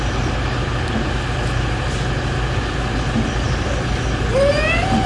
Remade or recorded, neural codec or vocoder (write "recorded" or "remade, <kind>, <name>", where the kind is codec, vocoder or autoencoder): recorded